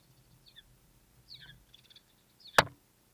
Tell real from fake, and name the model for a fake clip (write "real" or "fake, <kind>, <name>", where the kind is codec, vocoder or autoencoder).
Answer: real